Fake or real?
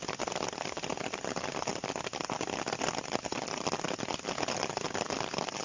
real